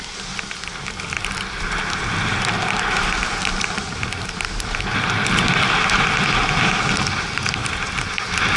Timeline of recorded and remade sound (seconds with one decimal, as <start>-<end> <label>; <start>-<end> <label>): 0.0-8.6 recorded